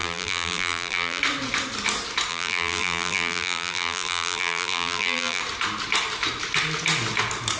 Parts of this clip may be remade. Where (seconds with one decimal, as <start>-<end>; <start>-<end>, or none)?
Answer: 0.0-1.2; 2.3-5.4